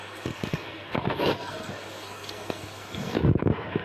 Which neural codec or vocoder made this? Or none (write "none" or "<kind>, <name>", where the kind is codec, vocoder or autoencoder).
codec, SNAC